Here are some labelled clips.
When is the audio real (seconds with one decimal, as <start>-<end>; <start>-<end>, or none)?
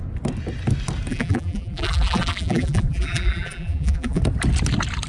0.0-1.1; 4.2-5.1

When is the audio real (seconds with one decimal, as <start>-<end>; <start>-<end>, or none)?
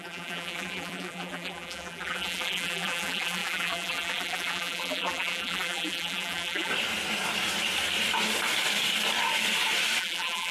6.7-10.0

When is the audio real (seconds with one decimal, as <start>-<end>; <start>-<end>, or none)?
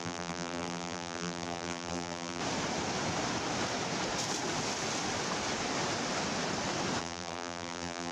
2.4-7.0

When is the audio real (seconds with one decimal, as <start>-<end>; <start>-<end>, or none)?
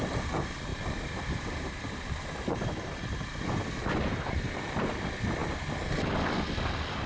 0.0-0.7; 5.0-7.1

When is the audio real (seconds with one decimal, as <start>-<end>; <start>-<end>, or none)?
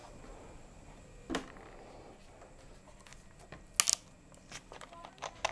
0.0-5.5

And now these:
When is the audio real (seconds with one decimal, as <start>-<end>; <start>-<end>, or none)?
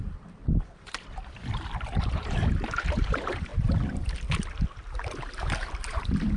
0.4-2.0; 3.5-5.3